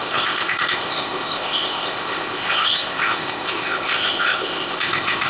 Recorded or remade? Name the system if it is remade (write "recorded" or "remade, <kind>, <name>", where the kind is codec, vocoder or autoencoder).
remade, codec, ZipCodec